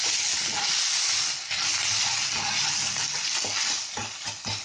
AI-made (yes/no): no